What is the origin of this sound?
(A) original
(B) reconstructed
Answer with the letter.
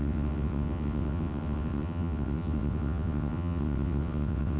B